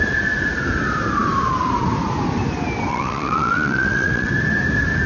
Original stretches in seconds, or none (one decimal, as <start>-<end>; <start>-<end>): 0.0-2.9; 4.3-5.1